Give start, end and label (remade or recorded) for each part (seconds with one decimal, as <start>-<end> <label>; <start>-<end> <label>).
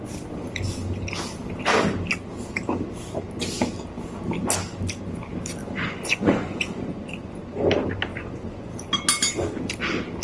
0.0-5.6 recorded; 5.6-7.6 remade; 7.6-8.1 recorded; 8.1-8.7 remade; 8.7-10.2 recorded